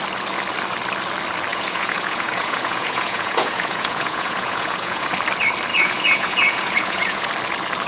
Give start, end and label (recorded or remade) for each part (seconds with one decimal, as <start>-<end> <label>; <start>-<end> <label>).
0.0-1.5 recorded; 1.5-5.1 remade; 5.1-5.7 recorded; 5.7-7.3 remade; 7.3-7.9 recorded